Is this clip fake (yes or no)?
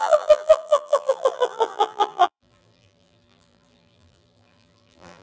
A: yes